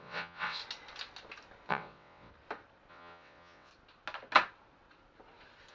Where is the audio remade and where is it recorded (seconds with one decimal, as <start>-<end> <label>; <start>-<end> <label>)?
0.0-0.6 remade; 0.6-1.7 recorded; 1.7-2.3 remade; 2.3-2.9 recorded; 2.9-3.7 remade; 3.7-5.7 recorded